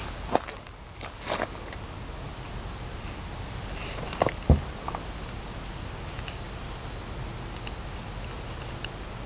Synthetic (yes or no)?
no